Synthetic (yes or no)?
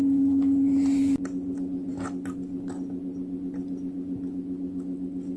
no